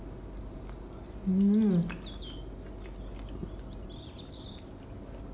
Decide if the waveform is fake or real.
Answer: real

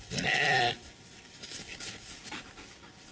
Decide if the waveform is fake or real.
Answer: real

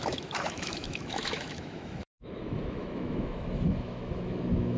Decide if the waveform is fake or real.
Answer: fake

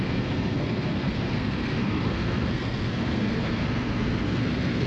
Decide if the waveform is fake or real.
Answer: fake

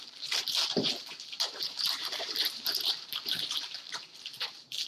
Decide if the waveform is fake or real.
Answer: fake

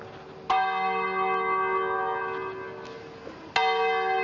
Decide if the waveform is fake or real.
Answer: real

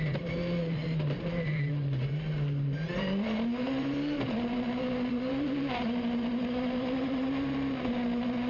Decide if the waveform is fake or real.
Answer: fake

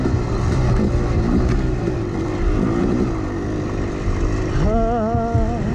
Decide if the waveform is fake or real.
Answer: real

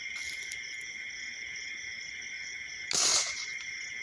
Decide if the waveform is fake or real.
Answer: real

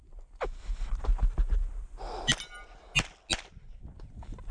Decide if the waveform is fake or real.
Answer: real